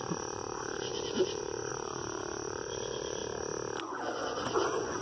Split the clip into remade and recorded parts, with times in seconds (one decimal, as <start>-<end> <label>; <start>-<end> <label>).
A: 0.0-3.2 remade; 3.2-3.8 recorded; 3.8-5.0 remade